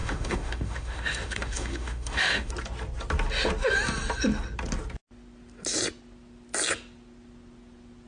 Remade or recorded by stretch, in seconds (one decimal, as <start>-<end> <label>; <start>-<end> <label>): 0.0-2.5 remade; 2.5-8.1 recorded